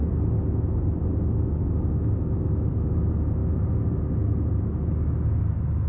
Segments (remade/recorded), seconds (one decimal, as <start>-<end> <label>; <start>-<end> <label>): 0.0-5.9 recorded